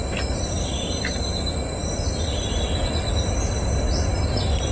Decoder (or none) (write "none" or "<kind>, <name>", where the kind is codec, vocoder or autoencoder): none